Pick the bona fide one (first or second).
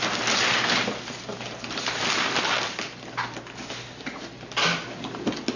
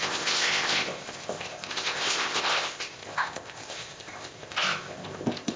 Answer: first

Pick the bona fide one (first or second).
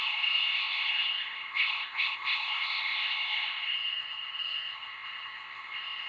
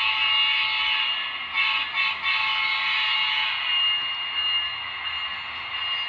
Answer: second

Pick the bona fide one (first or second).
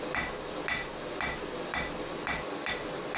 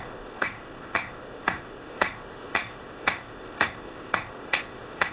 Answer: first